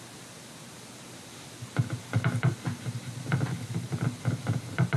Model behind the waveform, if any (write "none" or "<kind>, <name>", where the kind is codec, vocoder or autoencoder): none